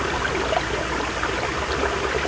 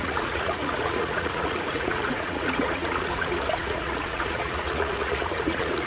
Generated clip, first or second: second